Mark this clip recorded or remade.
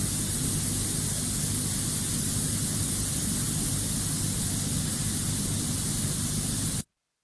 recorded